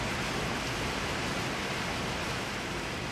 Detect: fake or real real